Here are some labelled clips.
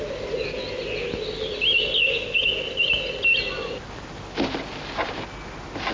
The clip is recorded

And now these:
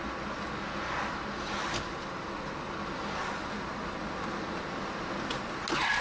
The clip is recorded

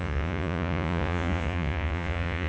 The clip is remade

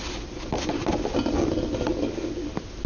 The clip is recorded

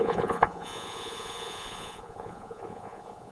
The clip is remade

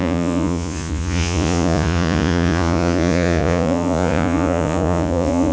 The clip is remade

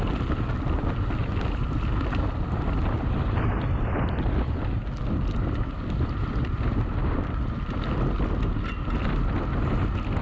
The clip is recorded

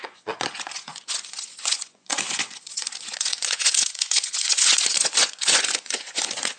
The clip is remade